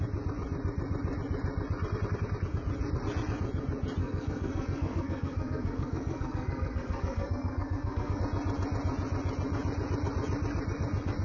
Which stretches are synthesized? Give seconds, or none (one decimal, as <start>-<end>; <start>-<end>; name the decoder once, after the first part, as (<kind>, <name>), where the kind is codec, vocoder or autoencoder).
4.0-8.2 (codec, SNAC)